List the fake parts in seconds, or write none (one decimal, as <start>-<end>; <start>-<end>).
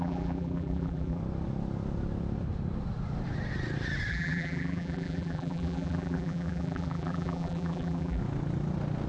0.0-1.2; 4.1-8.2